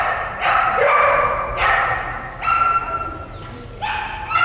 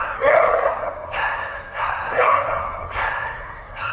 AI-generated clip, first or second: second